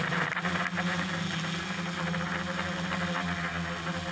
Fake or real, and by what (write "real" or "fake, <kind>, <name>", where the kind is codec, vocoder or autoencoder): real